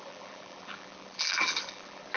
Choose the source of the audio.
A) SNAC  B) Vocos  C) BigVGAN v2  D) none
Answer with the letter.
C